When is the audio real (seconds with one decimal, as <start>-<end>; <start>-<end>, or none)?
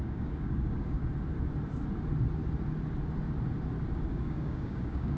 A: 1.0-4.1